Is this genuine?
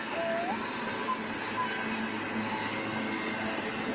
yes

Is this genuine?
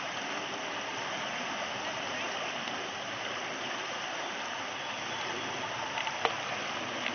yes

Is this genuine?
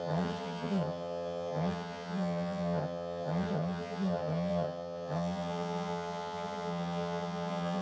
no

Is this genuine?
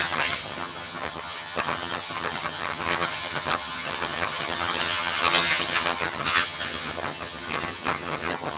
no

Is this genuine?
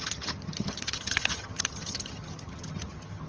no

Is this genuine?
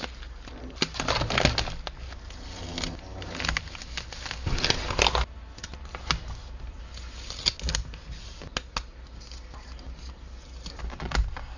yes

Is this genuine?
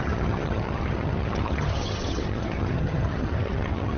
no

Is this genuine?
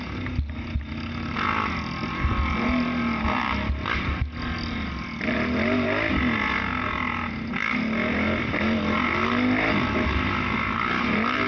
yes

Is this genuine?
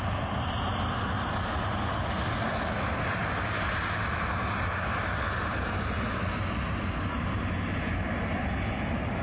yes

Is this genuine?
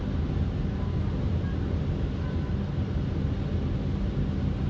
yes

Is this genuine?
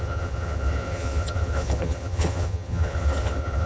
no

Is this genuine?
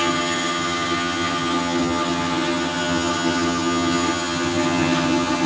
no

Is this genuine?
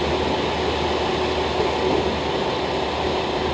yes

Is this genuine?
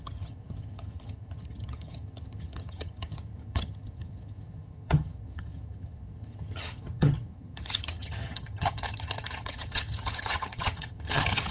no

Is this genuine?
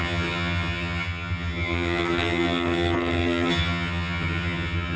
no